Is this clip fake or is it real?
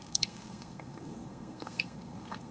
fake